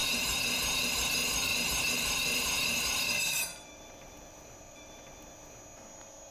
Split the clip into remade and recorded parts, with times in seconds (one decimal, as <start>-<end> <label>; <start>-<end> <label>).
0.0-1.1 remade; 1.1-1.5 recorded; 1.5-5.0 remade; 5.0-6.3 recorded